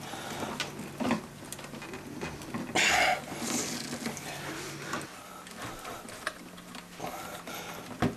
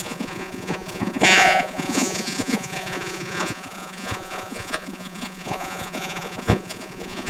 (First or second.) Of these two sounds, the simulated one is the second